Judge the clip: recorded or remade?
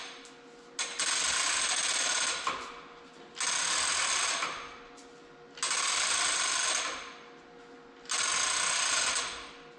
recorded